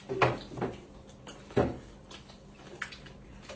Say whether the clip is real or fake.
real